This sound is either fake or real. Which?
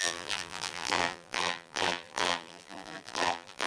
fake